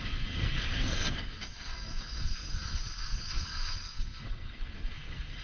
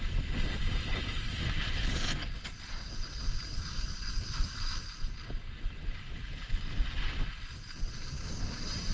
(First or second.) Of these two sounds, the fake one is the first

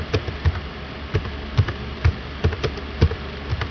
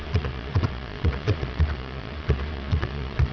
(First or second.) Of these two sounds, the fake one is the second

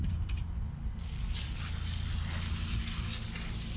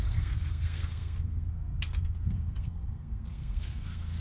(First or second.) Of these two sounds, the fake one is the second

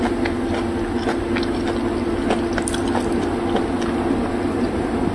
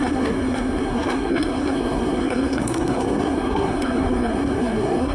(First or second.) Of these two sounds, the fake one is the second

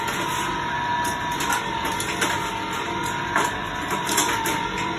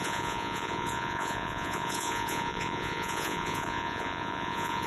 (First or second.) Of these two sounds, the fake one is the second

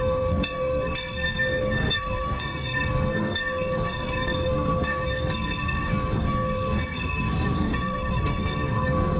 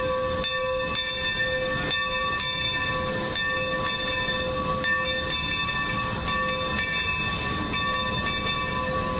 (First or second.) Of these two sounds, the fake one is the first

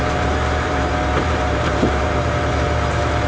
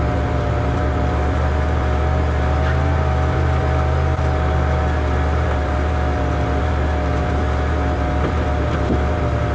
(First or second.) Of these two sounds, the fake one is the first